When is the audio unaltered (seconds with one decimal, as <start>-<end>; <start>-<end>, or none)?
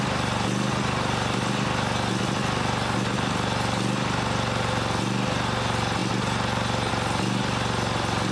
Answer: 0.0-8.3